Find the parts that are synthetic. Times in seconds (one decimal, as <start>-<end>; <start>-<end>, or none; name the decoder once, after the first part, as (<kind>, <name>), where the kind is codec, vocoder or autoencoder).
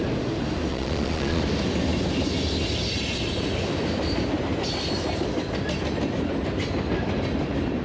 0.7-1.4 (vocoder, Vocos)